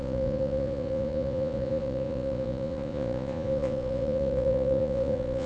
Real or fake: fake